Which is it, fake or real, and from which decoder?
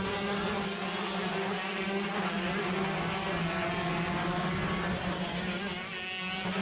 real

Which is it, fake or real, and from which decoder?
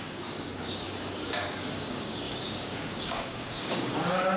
fake, codec, DAC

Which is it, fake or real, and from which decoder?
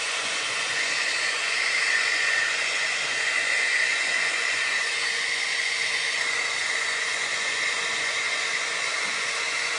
fake, vocoder, Vocos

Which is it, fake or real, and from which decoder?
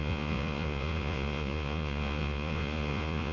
fake, vocoder, Vocos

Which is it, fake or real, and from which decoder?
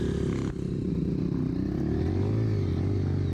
real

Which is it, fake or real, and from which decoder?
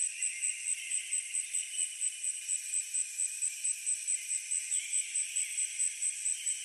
fake, vocoder, BigVGAN v2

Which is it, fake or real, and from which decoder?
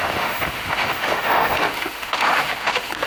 fake, autoencoder, DAC-VAE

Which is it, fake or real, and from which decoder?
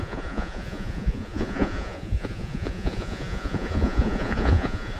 fake, vocoder, Vocos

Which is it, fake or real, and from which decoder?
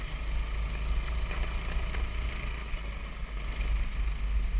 real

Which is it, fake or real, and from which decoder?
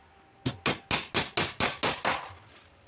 real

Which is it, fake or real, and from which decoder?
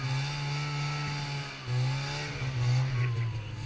real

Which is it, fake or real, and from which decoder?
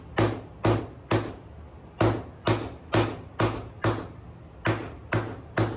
real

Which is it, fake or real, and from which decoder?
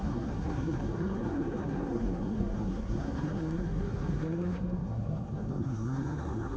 fake, codec, SNAC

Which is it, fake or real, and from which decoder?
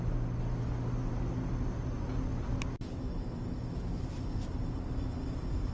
real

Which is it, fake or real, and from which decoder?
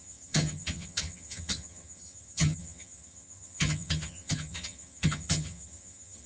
fake, vocoder, HiFi-GAN